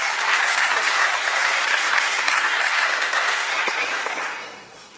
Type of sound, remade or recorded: remade